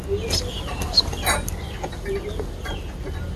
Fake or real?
real